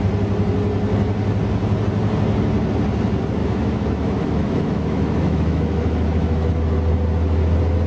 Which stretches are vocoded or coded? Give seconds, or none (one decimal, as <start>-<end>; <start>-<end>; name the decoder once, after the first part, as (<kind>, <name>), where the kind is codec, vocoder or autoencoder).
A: 3.4-6.5 (autoencoder, DAC-VAE)